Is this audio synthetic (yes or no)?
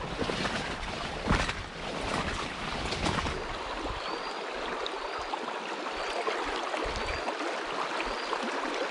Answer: no